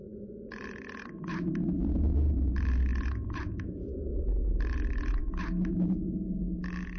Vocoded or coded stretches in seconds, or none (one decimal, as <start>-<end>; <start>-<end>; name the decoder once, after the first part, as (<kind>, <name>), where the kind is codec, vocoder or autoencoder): none